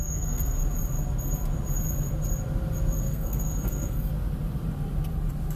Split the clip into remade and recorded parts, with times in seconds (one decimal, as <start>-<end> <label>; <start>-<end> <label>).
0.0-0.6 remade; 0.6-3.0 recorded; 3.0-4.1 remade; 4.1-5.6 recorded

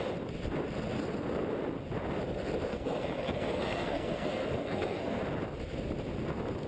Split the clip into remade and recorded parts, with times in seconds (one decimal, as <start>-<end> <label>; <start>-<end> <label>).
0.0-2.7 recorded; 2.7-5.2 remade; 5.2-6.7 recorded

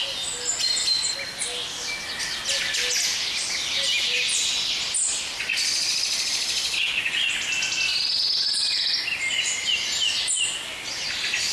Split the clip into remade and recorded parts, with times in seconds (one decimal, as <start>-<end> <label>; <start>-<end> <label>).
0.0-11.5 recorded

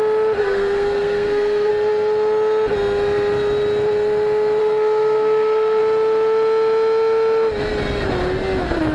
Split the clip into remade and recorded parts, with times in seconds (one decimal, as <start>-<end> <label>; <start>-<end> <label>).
0.0-0.4 recorded; 0.4-1.7 remade; 1.7-4.6 recorded; 4.6-5.8 remade; 5.8-8.9 recorded

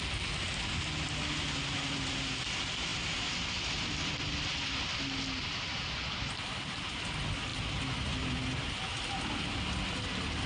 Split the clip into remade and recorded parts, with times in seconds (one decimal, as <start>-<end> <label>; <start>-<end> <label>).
0.0-10.5 recorded

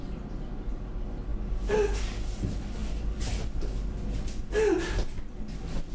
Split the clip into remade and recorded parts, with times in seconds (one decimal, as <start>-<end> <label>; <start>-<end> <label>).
0.0-5.9 recorded

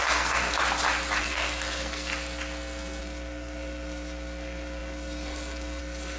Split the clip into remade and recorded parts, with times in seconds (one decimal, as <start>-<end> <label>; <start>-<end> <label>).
0.0-0.6 remade; 0.6-1.2 recorded; 1.2-2.1 remade; 2.1-3.0 recorded; 3.0-6.2 remade